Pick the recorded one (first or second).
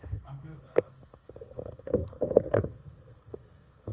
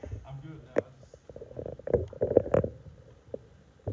second